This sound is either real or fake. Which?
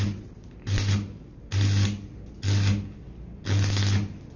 real